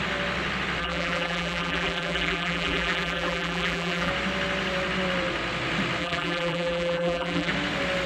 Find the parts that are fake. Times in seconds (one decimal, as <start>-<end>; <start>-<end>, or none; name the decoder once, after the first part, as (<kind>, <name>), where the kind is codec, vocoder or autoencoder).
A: 0.8-4.1 (vocoder, BigVGAN v2); 6.0-7.5